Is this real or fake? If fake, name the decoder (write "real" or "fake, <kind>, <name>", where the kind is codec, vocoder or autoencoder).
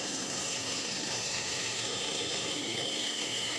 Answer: fake, codec, SNAC